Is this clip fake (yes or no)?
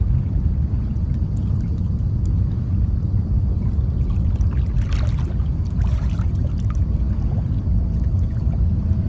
no